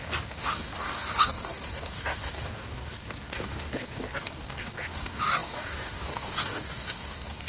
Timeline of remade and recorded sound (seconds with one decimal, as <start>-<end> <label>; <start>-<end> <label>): 0.0-7.5 remade